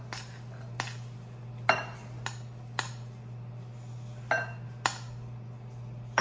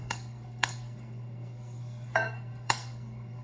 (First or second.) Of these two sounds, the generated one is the second